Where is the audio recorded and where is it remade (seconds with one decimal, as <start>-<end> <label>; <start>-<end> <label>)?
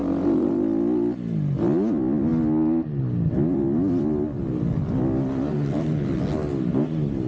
0.0-0.5 remade; 0.5-7.3 recorded